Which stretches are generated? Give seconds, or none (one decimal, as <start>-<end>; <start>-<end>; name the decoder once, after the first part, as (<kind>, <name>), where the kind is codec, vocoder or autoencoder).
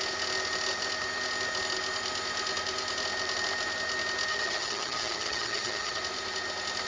4.3-6.0 (vocoder, HiFi-GAN)